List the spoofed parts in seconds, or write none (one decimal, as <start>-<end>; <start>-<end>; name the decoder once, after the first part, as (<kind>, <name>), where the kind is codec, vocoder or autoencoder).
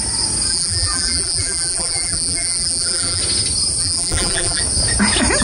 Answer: 0.5-3.2 (vocoder, BigVGAN v2); 3.8-4.6